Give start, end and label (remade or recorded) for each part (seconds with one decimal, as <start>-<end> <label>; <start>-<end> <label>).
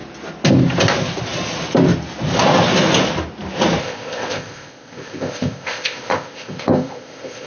0.0-3.8 recorded; 3.8-7.5 remade